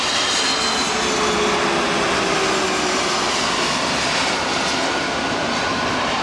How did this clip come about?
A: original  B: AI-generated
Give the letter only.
A